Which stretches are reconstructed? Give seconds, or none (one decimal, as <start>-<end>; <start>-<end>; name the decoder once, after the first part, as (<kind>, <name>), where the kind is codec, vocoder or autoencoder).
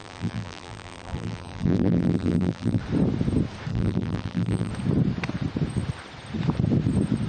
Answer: 0.0-2.8 (vocoder, BigVGAN v2); 3.7-4.7